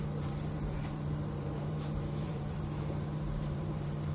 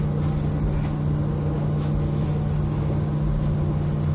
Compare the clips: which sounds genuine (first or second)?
second